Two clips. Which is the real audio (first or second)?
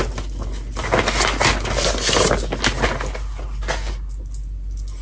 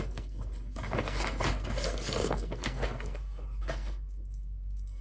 first